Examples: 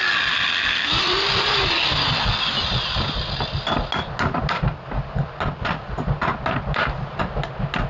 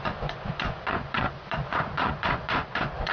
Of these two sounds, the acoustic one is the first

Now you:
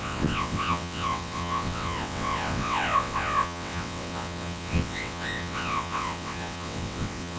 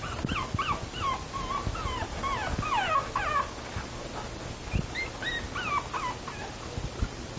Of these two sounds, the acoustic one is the second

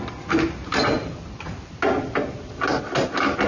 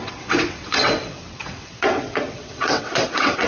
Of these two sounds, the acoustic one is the first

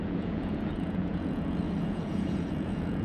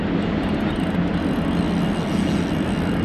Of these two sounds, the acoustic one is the second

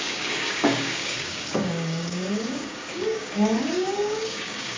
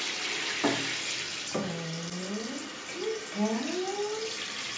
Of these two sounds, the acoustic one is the second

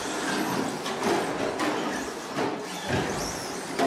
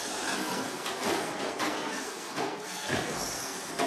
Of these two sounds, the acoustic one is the first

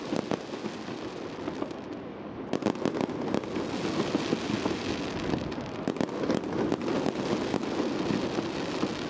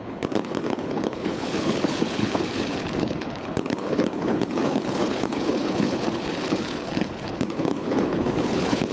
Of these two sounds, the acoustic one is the first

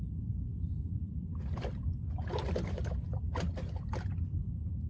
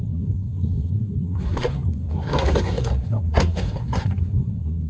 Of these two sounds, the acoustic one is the first